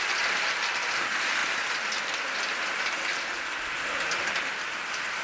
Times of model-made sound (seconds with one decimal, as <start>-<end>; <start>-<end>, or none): none